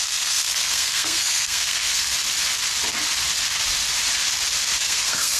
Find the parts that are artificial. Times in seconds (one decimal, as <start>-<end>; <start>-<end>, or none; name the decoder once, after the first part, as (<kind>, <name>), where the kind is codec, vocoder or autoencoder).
0.0-2.1 (codec, SNAC); 4.8-5.4